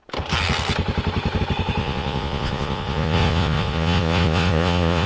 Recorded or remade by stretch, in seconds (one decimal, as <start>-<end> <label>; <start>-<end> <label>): 0.0-1.8 recorded; 1.8-5.1 remade